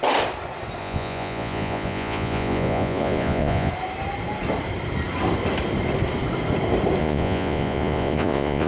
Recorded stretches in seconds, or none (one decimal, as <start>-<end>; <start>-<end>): 0.0-0.8; 3.7-7.0